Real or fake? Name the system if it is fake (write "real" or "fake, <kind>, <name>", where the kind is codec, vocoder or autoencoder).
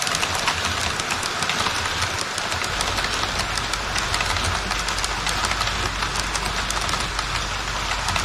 real